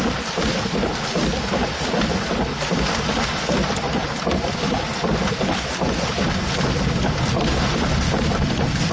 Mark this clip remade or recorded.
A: recorded